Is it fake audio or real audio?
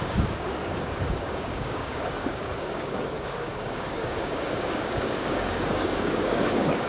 fake